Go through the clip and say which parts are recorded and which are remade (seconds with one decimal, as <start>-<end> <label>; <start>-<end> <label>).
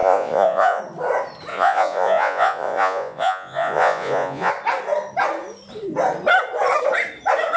0.0-0.8 remade; 0.8-1.5 recorded; 1.5-4.5 remade; 4.5-7.6 recorded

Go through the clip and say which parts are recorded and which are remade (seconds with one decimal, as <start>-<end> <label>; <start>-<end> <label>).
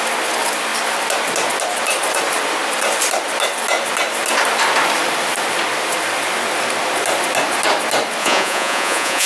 0.0-8.2 recorded; 8.2-9.3 remade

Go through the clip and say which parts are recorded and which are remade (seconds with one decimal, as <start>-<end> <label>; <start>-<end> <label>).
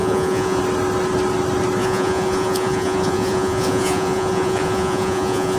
0.0-0.6 remade; 0.6-1.8 recorded; 1.8-5.6 remade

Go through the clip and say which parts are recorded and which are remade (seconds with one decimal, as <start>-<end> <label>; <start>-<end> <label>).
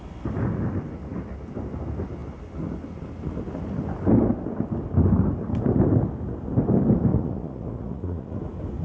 0.0-7.1 recorded; 7.1-8.4 remade; 8.4-8.8 recorded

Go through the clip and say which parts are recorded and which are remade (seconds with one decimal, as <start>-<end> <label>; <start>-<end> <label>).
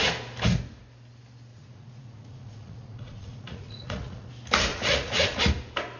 0.0-1.5 recorded; 1.5-4.3 remade; 4.3-4.7 recorded; 4.7-5.4 remade; 5.4-6.0 recorded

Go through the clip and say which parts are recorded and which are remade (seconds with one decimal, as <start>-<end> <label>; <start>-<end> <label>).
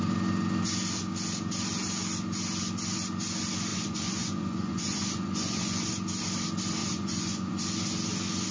0.0-3.7 recorded; 3.7-5.9 remade; 5.9-6.8 recorded; 6.8-7.6 remade; 7.6-8.5 recorded